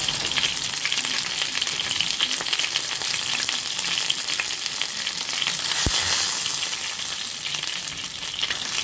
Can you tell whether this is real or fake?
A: real